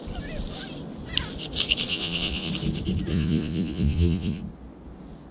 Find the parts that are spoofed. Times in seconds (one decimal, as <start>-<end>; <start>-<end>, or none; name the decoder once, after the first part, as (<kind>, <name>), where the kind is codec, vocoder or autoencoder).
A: 1.9-2.5 (vocoder, Vocos); 3.1-4.4